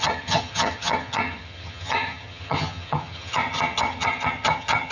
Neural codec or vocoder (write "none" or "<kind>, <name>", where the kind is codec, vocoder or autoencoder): vocoder, HiFi-GAN